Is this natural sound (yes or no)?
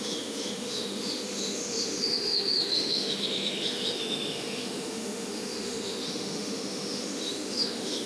no